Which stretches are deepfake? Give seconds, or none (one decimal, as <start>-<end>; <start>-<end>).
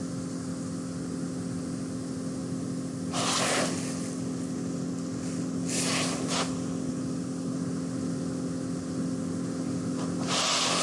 none